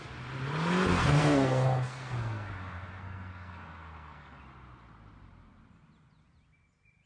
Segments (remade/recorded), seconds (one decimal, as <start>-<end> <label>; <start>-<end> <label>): 0.0-0.9 recorded; 0.9-4.4 remade; 4.4-7.1 recorded